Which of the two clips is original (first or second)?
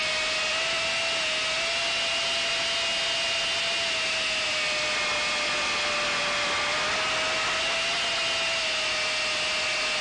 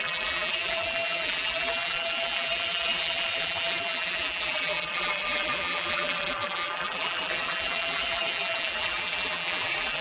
first